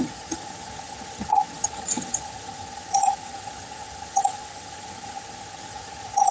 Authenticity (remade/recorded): remade